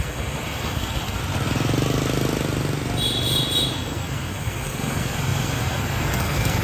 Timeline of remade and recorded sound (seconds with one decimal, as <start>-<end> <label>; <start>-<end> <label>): 0.0-1.2 remade; 1.2-3.7 recorded; 3.7-6.6 remade